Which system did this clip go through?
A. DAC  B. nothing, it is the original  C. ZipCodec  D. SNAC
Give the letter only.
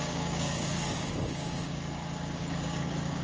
A